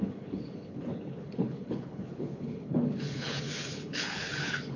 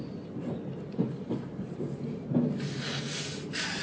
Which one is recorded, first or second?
second